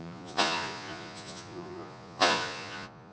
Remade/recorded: remade